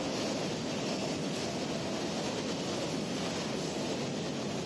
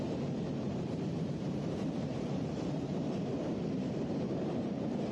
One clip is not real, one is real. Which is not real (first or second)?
second